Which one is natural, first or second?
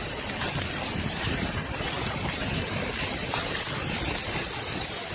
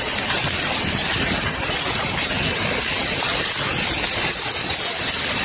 second